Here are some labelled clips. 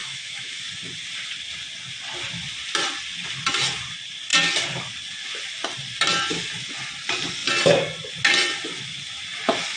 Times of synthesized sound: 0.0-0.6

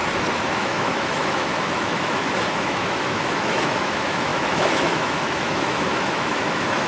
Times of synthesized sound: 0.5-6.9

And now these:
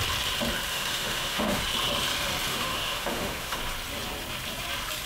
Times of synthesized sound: 0.7-1.6; 2.5-3.6

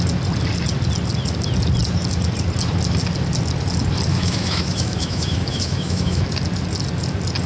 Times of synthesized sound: 4.1-6.2

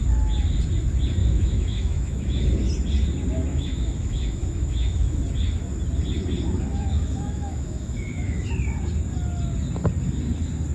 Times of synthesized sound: 1.2-2.4; 3.5-5.2; 6.7-8.4